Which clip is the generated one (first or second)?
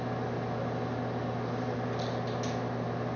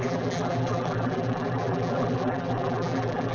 second